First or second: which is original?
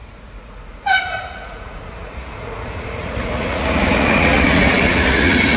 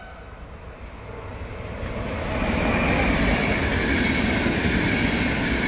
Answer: second